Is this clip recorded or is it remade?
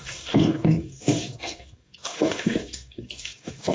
remade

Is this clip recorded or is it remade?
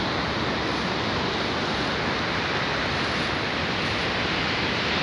recorded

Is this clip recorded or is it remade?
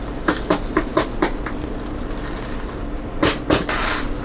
recorded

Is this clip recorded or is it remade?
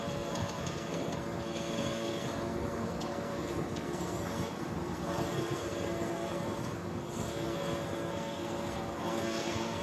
remade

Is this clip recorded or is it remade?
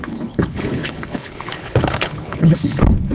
remade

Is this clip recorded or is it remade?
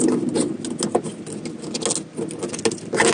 recorded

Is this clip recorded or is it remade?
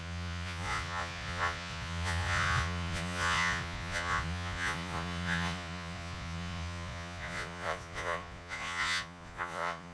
remade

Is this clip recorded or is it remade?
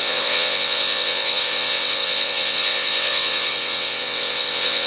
remade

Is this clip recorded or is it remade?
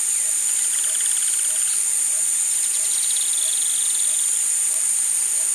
recorded